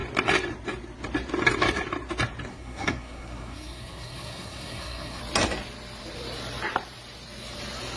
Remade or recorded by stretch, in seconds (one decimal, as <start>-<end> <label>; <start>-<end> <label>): 0.0-2.5 recorded; 2.5-5.2 remade; 5.2-8.0 recorded